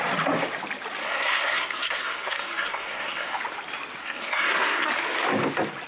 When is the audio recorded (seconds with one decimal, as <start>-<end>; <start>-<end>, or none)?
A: 0.0-1.0; 3.4-4.0; 4.9-5.9